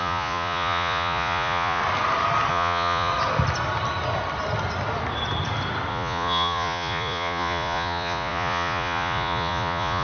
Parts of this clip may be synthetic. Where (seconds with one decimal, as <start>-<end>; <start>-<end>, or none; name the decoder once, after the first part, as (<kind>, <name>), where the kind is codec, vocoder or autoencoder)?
0.0-1.8 (vocoder, Vocos); 2.5-3.1; 5.9-10.0